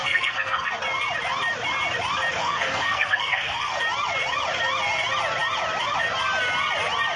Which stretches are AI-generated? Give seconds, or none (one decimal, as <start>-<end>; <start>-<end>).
0.0-0.7; 2.4-3.8